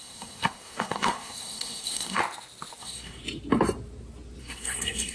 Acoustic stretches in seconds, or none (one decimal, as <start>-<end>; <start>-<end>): 2.2-2.8; 3.2-4.4